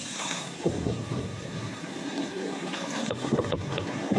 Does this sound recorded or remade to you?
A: remade